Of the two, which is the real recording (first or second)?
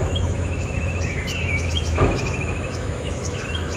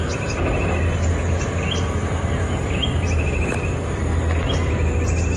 second